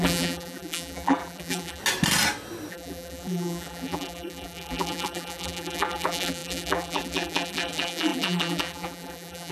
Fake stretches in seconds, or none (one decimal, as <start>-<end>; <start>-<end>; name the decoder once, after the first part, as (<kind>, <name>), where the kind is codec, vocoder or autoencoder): 0.0-1.8 (vocoder, BigVGAN v2); 2.7-9.5